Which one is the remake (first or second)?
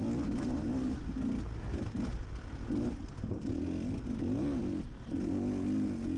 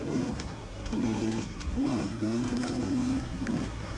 second